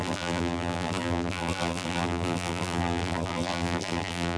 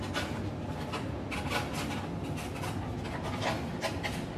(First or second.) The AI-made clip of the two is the first